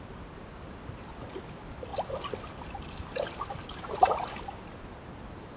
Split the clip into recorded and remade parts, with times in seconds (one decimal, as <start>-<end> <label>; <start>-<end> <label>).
0.0-5.6 recorded